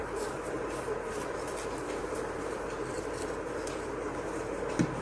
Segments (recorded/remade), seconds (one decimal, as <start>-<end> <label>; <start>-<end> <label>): 0.0-3.0 remade; 3.0-5.0 recorded